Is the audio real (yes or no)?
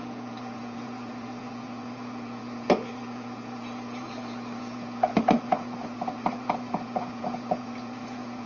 no